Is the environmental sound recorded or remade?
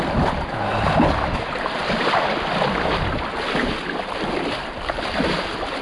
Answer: recorded